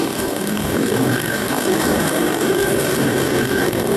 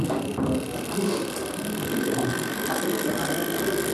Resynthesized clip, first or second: first